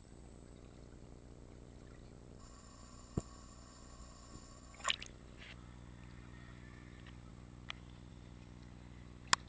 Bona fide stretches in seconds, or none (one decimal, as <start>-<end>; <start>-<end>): 0.0-2.4; 4.9-9.5